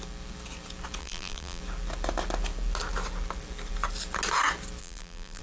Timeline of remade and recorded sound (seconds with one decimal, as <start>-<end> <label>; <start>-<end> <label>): 0.0-1.0 recorded; 1.0-1.6 remade; 1.6-4.8 recorded; 4.8-5.4 remade